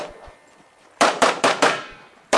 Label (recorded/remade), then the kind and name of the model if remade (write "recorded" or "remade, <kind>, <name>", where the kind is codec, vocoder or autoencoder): remade, vocoder, BigVGAN v2